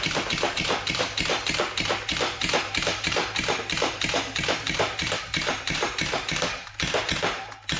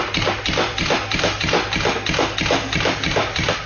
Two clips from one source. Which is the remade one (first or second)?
first